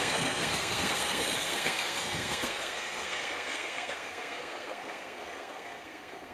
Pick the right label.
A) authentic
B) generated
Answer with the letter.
B